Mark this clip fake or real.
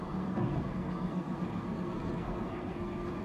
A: fake